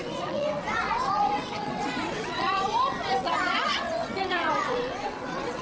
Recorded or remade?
remade